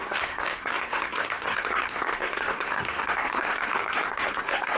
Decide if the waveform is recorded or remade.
remade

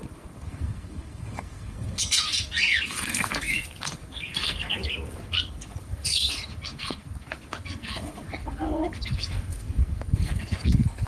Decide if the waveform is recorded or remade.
remade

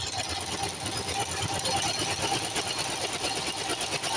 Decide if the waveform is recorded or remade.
recorded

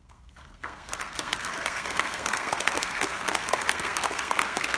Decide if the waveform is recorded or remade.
remade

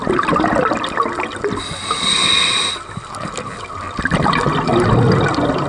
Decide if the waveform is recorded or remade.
recorded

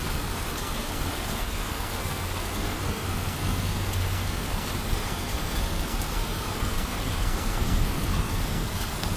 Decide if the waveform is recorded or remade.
remade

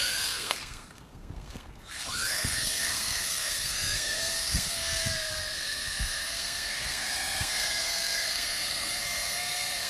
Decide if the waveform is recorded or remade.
remade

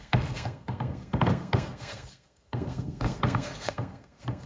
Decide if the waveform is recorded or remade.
remade